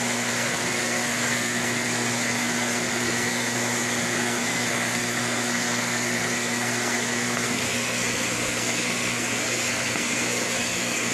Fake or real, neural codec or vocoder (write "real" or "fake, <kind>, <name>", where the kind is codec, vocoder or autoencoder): fake, codec, SNAC